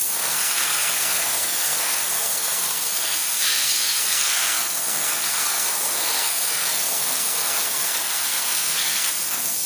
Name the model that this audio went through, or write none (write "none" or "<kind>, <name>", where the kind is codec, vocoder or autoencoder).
codec, SNAC